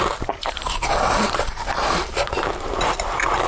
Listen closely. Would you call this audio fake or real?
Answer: fake